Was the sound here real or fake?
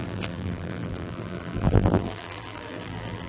fake